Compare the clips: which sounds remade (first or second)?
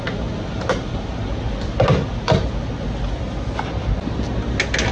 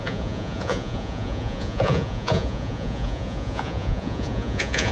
second